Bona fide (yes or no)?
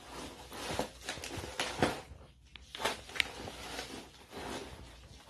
yes